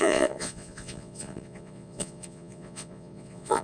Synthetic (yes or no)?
yes